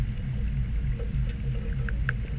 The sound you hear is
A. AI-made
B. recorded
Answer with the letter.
B